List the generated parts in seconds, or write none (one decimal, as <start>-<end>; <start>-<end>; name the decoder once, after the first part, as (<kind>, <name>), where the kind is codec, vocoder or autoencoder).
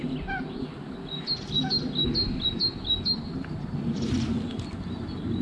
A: none